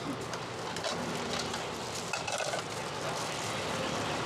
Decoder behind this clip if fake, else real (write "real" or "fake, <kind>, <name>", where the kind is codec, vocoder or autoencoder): real